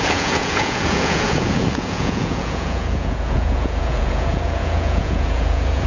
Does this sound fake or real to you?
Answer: fake